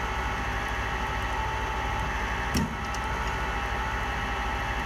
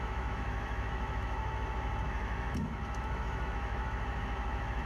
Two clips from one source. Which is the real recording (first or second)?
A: first